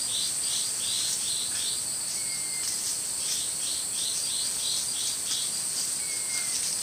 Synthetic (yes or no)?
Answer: no